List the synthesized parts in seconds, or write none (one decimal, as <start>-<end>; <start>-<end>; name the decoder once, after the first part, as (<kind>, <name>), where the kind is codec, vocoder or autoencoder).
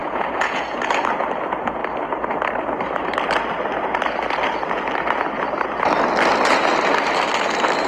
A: 0.0-0.8 (vocoder, Vocos)